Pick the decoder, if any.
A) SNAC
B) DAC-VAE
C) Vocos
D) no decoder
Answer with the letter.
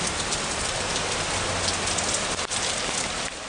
D